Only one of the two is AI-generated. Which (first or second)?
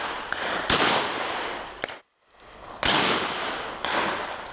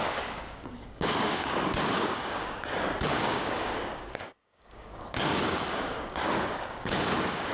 second